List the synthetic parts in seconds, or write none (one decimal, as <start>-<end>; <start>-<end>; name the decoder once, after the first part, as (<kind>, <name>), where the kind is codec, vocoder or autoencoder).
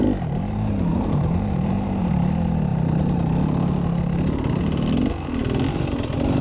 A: 0.9-2.1 (vocoder, BigVGAN v2)